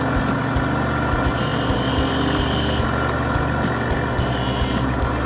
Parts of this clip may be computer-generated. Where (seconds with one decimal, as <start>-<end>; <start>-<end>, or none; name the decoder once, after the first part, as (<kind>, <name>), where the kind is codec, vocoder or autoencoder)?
none